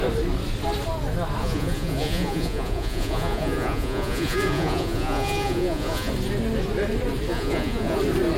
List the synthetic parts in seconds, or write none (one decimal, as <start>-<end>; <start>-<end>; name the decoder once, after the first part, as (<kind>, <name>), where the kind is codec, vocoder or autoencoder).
1.4-6.1 (vocoder, Vocos); 7.3-8.0